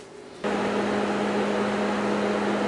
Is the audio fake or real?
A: real